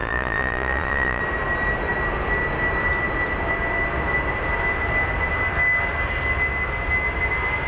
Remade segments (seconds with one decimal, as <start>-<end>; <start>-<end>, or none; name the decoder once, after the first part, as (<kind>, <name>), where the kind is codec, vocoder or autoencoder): 0.0-1.2 (vocoder, Vocos)